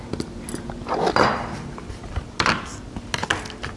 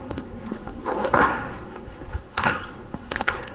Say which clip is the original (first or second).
first